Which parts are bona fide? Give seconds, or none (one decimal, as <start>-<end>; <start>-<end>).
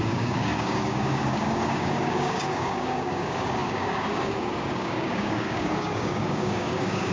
none